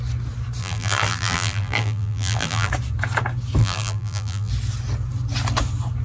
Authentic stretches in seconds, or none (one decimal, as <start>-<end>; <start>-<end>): 0.0-0.6; 2.7-3.6; 4.5-6.0

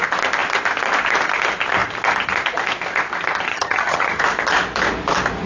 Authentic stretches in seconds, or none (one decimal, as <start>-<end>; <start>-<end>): 0.0-3.5; 4.2-5.5

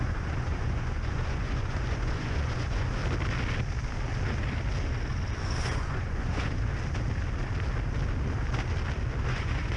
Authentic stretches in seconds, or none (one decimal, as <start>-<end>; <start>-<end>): 3.0-5.4; 6.7-9.3

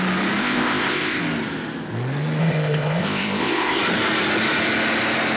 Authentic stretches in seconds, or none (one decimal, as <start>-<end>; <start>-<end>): 0.0-0.4; 1.2-2.4; 3.8-5.4

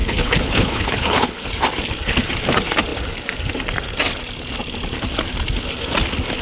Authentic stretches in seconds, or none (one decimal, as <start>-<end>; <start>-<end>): 1.4-6.4

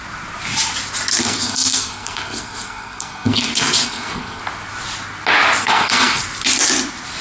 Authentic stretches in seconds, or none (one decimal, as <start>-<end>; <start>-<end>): 0.0-1.2; 4.4-5.6; 6.2-7.2

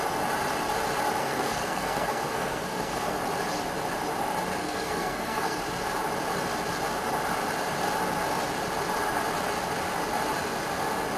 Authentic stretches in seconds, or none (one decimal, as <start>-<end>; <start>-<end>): 0.0-1.2; 3.2-4.6; 5.6-11.2

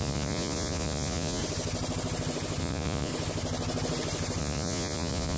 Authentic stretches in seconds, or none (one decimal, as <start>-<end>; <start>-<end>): 1.4-2.6; 3.1-4.4